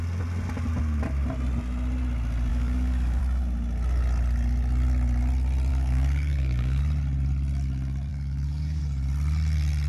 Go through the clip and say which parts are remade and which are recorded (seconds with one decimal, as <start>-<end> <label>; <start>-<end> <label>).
0.0-2.5 recorded; 2.5-3.2 remade; 3.2-5.7 recorded; 5.7-6.8 remade; 6.8-8.1 recorded; 8.1-8.8 remade; 8.8-9.9 recorded